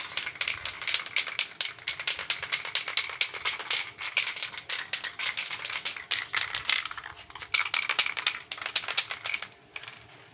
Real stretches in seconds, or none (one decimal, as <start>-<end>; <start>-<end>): 0.0-10.3